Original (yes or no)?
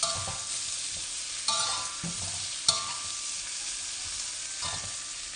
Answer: yes